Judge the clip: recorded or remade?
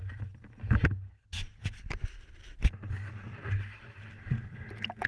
recorded